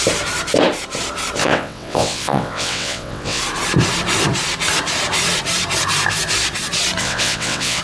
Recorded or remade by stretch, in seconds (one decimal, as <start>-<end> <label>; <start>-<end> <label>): 0.0-1.4 recorded; 1.4-3.4 remade; 3.4-7.0 recorded; 7.0-7.8 remade